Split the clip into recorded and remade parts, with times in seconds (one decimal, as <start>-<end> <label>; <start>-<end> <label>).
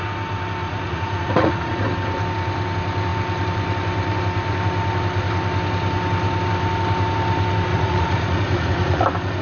0.0-0.6 recorded; 0.6-1.7 remade; 1.7-7.7 recorded; 7.7-9.0 remade; 9.0-9.4 recorded